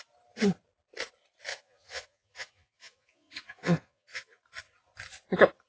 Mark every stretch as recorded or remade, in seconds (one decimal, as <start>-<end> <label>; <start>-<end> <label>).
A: 0.0-1.5 recorded; 1.5-4.4 remade; 4.4-5.7 recorded

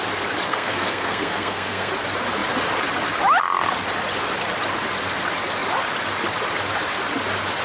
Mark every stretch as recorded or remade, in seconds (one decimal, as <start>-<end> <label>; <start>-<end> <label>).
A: 0.0-0.5 recorded; 0.5-1.9 remade; 1.9-7.6 recorded

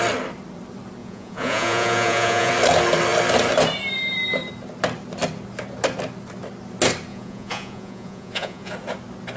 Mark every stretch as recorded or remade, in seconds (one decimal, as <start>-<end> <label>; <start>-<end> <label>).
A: 0.0-1.0 recorded; 1.0-2.5 remade; 2.5-7.1 recorded; 7.1-8.7 remade; 8.7-9.4 recorded

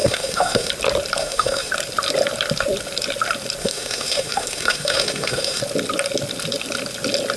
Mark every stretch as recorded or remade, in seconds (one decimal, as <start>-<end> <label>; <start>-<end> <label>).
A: 0.0-0.7 remade; 0.7-1.2 recorded; 1.2-1.7 remade; 1.7-3.6 recorded; 3.6-5.6 remade; 5.6-7.4 recorded

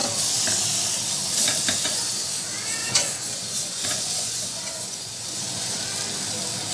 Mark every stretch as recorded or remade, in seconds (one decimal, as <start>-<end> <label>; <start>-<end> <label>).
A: 0.0-1.8 recorded; 1.8-2.3 remade; 2.3-2.8 recorded; 2.8-5.8 remade; 5.8-6.7 recorded

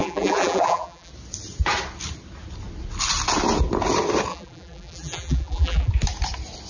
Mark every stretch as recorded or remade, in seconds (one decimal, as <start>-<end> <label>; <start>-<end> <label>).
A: 0.0-1.1 remade; 1.1-4.3 recorded; 4.3-5.9 remade; 5.9-6.7 recorded